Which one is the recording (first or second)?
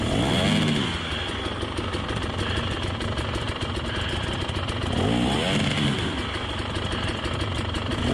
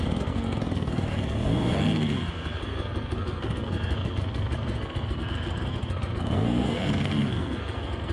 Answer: first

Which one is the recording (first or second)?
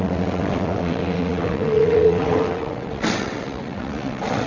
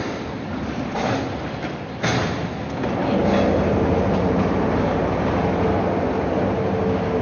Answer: second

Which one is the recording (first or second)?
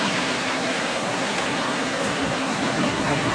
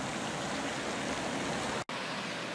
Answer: second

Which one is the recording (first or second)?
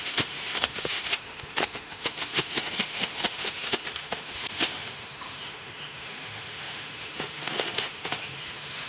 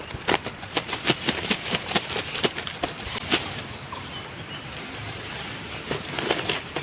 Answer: second